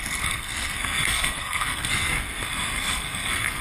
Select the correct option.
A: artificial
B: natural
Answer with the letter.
A